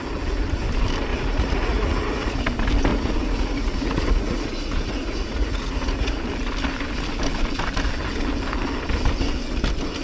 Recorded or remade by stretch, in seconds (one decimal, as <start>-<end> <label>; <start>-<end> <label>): 0.0-1.1 recorded; 1.1-2.4 remade; 2.4-2.9 recorded; 2.9-6.2 remade; 6.2-10.0 recorded